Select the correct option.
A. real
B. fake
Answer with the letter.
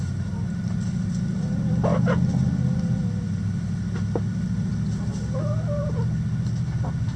A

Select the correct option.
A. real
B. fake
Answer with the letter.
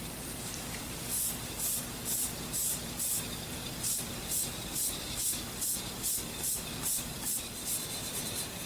B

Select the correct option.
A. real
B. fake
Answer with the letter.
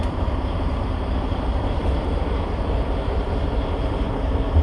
B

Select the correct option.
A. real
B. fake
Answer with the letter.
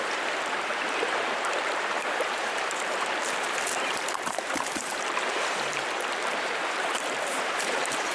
B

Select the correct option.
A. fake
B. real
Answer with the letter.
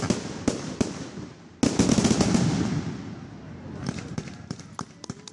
B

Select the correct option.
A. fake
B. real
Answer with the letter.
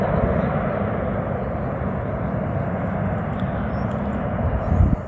B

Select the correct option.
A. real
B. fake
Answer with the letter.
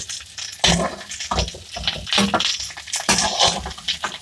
A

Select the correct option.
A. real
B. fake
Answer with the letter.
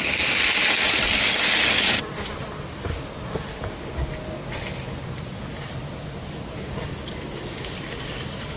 A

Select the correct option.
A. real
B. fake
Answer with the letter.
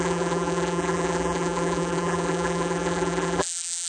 B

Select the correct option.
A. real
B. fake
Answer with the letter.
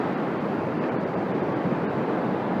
A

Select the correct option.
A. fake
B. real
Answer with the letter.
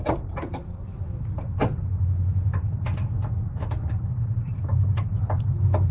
A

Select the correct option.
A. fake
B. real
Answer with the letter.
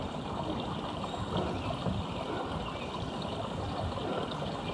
B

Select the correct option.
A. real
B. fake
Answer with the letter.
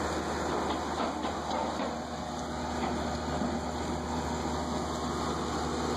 A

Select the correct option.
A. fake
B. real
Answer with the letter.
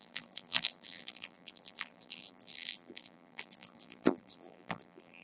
A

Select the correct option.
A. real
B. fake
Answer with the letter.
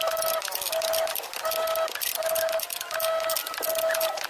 A